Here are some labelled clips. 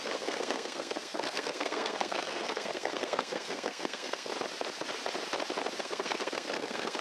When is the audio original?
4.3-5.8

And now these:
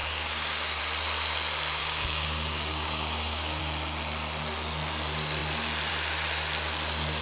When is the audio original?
0.8-1.8; 3.6-7.2

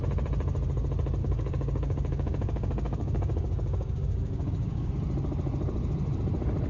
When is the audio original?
0.0-1.2; 4.9-6.7